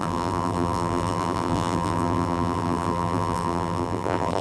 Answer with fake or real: fake